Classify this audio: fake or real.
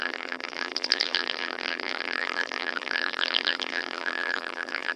fake